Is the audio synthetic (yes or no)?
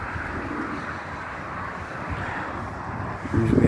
no